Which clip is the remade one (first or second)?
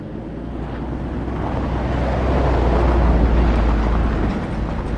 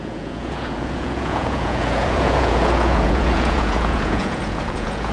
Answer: second